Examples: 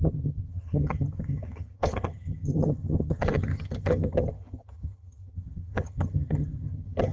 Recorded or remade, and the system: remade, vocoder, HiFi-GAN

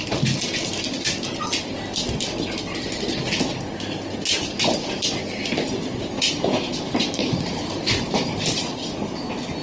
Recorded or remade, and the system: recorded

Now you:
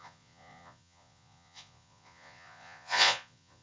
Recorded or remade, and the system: remade, vocoder, Vocos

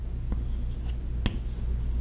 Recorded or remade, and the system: recorded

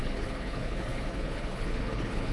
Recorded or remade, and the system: remade, codec, HILCodec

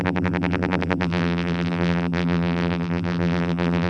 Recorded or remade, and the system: remade, vocoder, BigVGAN v2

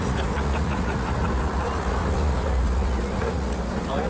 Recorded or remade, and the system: remade, vocoder, Vocos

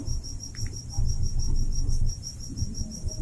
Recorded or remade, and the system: recorded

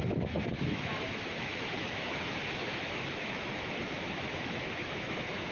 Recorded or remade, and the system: remade, autoencoder, DAC-VAE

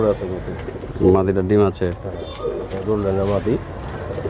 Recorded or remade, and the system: recorded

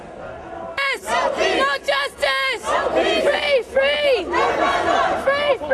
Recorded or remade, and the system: recorded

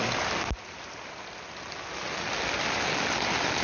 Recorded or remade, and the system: recorded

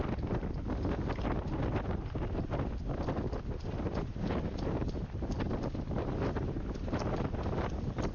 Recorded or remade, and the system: recorded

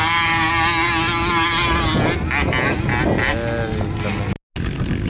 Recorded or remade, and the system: recorded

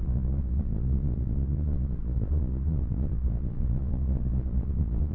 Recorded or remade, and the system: remade, vocoder, Vocos